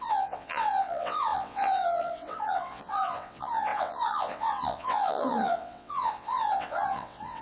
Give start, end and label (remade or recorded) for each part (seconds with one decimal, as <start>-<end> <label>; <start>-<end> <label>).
0.0-7.4 remade